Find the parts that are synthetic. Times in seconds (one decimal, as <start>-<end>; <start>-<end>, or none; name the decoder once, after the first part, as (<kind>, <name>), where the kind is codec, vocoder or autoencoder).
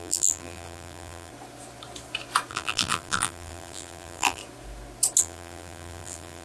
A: 0.0-1.3 (vocoder, BigVGAN v2); 2.5-4.4; 5.2-6.4